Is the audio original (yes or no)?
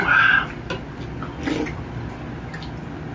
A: yes